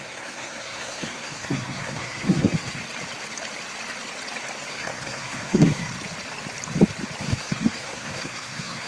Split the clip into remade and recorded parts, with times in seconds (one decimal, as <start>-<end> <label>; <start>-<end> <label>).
0.0-2.8 remade; 2.8-4.7 recorded; 4.7-5.9 remade; 5.9-7.2 recorded; 7.2-8.9 remade